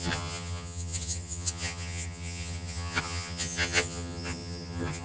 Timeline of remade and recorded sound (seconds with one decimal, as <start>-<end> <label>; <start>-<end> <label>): 0.0-5.0 remade